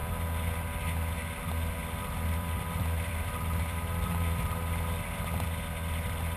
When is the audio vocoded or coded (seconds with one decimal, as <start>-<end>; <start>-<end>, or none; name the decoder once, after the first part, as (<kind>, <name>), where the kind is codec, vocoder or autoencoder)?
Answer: 1.8-5.0 (vocoder, BigVGAN v2)

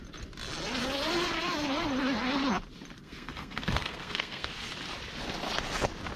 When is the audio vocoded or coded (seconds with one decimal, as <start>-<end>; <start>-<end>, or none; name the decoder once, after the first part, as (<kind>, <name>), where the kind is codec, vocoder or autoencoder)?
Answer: 3.0-4.5 (codec, SNAC)

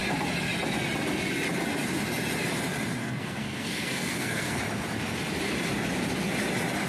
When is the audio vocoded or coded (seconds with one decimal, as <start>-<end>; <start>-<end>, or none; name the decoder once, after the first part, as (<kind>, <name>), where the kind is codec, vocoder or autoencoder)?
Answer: 3.0-4.6 (codec, SNAC)

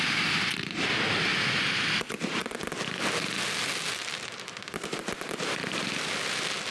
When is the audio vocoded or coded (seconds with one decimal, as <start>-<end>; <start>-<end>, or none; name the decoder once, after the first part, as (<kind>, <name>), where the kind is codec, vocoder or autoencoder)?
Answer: 0.0-1.3 (vocoder, BigVGAN v2); 1.9-2.4; 3.9-6.7

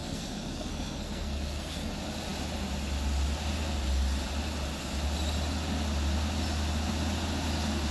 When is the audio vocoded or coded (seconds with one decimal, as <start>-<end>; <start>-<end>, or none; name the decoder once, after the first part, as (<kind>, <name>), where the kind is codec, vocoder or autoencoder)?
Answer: 0.0-1.9 (codec, SNAC)